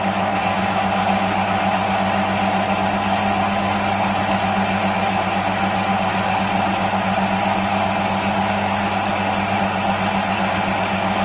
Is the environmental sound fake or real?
real